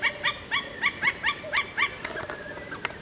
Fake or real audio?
real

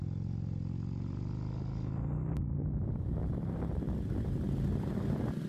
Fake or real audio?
real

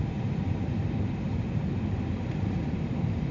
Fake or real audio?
fake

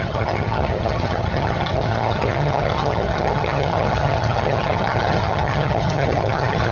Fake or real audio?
fake